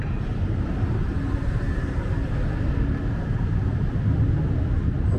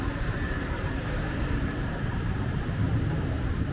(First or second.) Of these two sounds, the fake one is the second